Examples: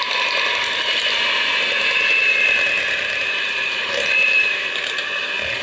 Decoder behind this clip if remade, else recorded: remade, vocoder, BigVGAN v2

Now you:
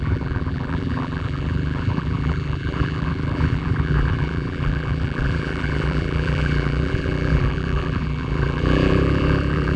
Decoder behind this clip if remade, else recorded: remade, vocoder, BigVGAN v2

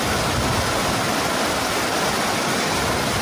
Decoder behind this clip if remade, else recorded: recorded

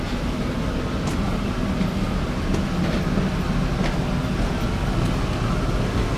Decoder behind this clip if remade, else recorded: recorded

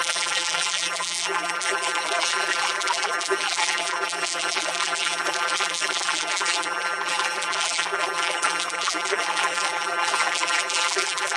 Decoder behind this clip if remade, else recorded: remade, vocoder, BigVGAN v2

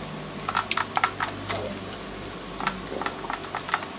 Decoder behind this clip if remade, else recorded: recorded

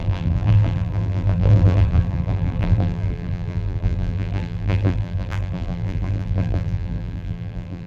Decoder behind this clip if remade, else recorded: remade, vocoder, BigVGAN v2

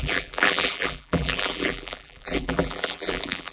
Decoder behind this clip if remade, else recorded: remade, vocoder, BigVGAN v2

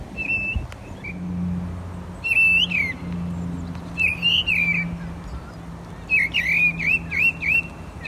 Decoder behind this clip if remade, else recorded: recorded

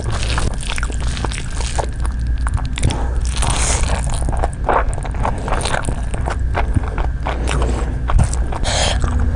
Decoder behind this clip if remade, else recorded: recorded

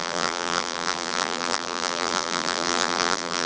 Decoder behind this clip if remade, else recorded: remade, vocoder, BigVGAN v2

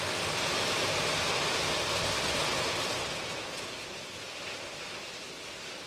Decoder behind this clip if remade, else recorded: recorded